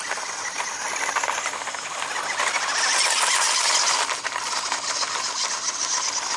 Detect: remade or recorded recorded